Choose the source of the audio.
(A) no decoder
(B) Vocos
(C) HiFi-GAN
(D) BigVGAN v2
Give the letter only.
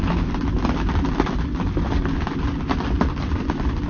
A